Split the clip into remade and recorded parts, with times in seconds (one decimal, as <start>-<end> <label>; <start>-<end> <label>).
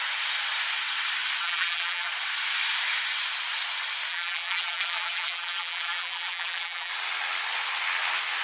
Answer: 0.0-1.4 recorded; 1.4-2.1 remade; 2.1-4.1 recorded; 4.1-6.9 remade; 6.9-8.4 recorded